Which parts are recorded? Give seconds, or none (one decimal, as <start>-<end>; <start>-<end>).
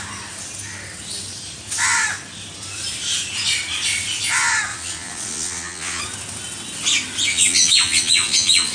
0.0-4.7; 6.0-7.3